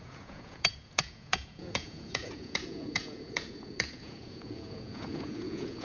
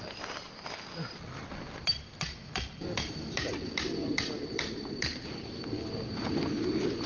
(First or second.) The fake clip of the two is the first